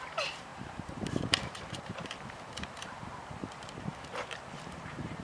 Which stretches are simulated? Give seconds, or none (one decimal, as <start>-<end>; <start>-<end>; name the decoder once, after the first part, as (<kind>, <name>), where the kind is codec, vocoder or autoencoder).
0.0-5.2 (vocoder, BigVGAN v2)